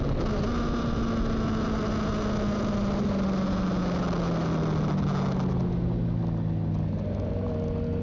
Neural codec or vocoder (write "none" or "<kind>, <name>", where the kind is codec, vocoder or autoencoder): none